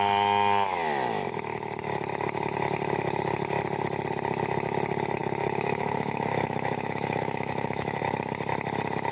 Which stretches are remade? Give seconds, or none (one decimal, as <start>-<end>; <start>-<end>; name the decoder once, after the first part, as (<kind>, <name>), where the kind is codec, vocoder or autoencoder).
5.2-8.0 (autoencoder, DAC-VAE)